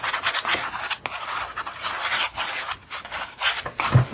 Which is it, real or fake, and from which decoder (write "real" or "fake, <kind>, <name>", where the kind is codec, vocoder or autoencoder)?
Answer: real